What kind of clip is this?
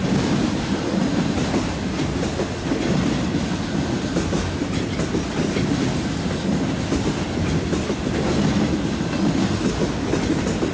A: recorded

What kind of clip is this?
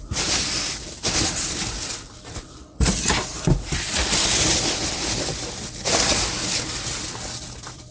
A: recorded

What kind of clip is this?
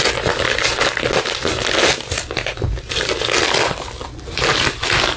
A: recorded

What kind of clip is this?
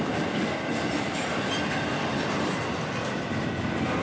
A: recorded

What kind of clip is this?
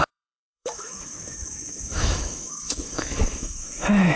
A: remade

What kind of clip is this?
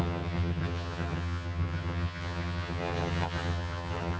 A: remade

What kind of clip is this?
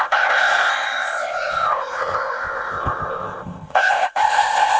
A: remade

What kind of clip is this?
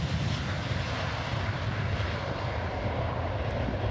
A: recorded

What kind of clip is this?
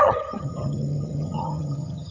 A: remade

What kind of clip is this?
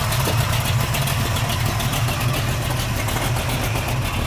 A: recorded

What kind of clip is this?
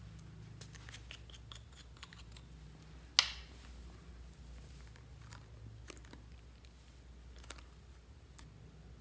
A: recorded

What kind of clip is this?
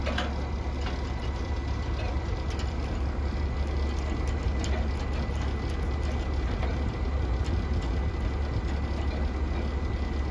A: recorded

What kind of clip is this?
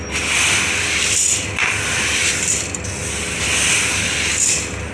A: recorded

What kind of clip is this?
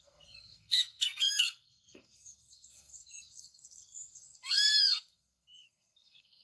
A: remade